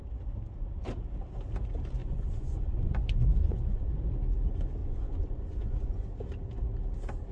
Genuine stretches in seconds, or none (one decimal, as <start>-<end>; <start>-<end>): 0.0-2.0; 3.9-4.8; 6.1-7.3